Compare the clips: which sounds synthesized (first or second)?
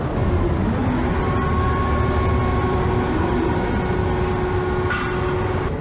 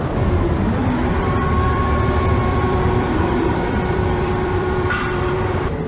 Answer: second